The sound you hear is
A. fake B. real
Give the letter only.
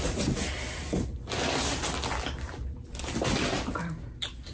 B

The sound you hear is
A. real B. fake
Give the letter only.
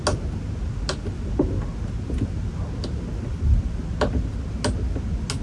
A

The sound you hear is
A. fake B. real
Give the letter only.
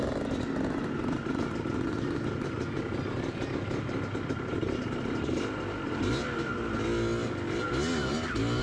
B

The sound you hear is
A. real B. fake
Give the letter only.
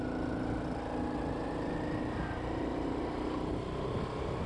A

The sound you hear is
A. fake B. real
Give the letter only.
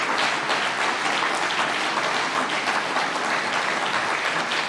B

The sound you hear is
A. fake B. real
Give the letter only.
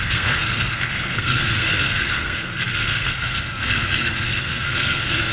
A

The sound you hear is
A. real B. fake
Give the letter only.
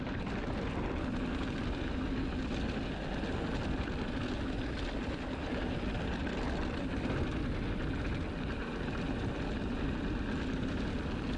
A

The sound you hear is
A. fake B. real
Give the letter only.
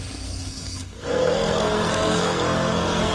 A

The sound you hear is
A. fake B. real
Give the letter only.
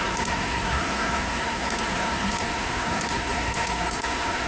A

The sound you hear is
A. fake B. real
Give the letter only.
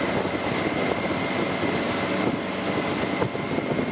B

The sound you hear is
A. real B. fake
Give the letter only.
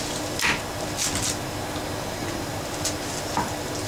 A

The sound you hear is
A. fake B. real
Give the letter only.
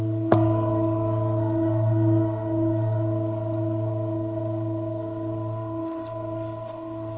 A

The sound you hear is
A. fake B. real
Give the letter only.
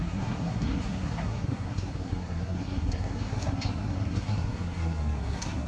A